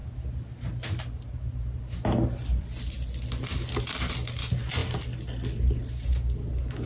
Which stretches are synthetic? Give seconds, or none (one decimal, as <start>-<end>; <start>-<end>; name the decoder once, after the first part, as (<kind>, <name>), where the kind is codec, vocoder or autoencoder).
none